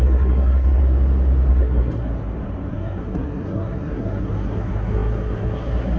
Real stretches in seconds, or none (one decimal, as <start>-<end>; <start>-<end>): 0.8-1.5; 2.1-2.7